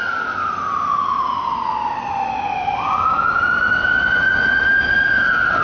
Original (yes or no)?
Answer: yes